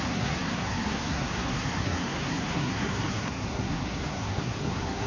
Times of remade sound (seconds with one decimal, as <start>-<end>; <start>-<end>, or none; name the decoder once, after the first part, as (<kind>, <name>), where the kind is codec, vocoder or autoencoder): 0.0-5.1 (codec, SNAC)